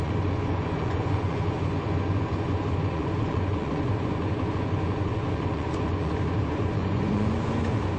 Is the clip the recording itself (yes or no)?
no